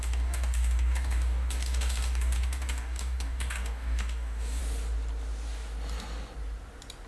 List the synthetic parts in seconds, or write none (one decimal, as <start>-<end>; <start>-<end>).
0.0-4.6